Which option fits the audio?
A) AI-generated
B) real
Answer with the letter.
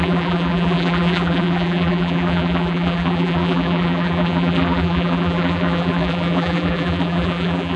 A